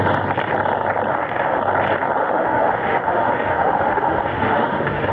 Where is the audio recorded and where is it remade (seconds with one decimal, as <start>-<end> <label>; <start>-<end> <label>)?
0.0-1.1 recorded; 1.1-1.6 remade; 1.6-2.2 recorded; 2.2-5.1 remade